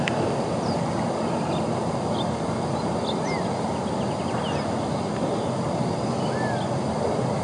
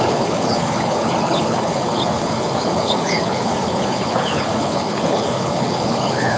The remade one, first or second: second